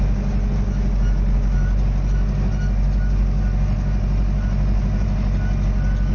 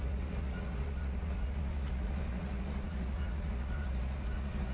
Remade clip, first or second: second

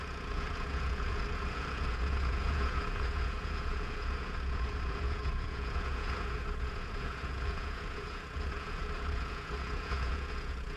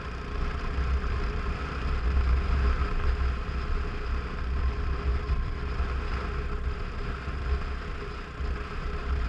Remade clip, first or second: first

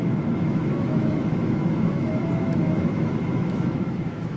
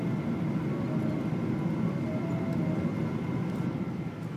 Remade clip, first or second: first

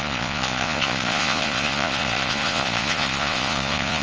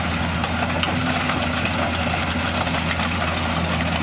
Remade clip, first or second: first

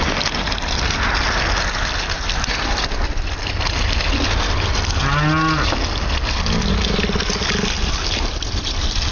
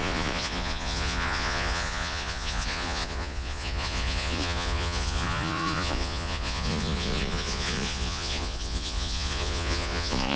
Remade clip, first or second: second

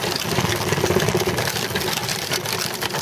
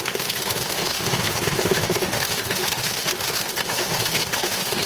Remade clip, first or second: second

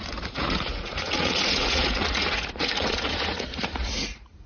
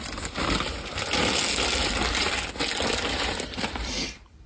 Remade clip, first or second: first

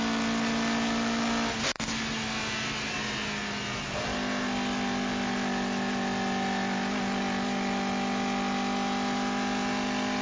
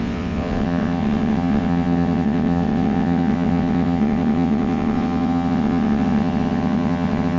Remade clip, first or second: second